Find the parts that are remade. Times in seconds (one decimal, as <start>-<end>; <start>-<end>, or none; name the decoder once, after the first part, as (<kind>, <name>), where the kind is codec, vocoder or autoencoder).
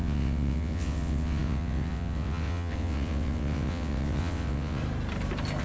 0.0-4.8 (vocoder, WaveNeXt)